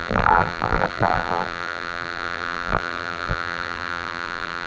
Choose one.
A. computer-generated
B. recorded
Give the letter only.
A